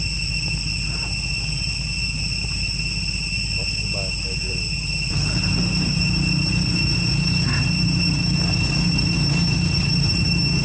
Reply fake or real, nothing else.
real